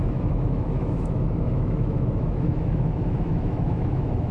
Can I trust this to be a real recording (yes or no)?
no